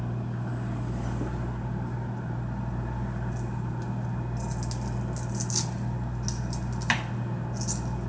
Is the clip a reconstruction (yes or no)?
no